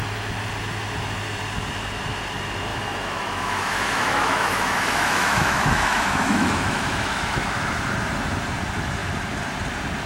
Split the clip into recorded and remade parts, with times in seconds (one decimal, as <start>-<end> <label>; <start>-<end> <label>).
0.0-2.7 recorded; 2.7-7.7 remade; 7.7-10.1 recorded